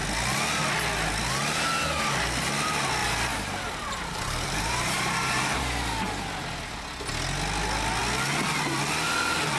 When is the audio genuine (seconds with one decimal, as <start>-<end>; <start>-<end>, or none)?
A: 0.0-3.0; 5.6-9.6